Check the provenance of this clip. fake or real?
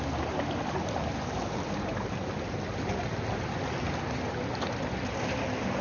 real